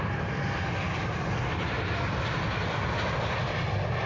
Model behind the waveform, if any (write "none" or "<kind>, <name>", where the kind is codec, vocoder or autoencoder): none